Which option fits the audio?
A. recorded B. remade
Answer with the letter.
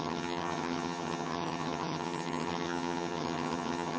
B